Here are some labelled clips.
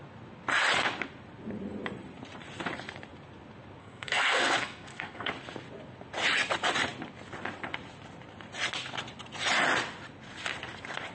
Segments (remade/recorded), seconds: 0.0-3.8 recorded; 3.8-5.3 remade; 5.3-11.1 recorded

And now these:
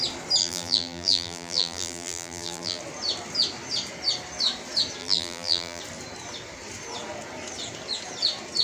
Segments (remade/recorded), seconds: 0.0-0.4 recorded; 0.4-2.8 remade; 2.8-5.0 recorded; 5.0-5.8 remade; 5.8-8.6 recorded

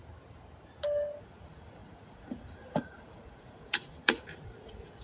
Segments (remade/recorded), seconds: 0.0-1.2 recorded; 1.2-5.0 remade